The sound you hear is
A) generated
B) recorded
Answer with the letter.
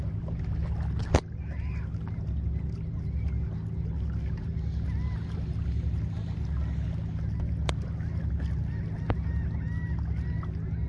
B